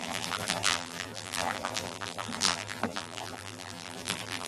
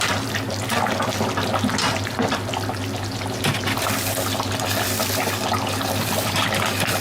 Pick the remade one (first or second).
first